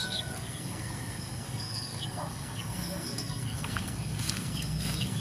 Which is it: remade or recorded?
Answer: remade